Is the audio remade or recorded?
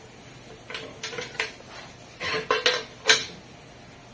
recorded